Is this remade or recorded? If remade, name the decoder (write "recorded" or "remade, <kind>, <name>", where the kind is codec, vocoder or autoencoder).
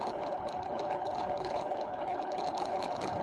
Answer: remade, codec, HILCodec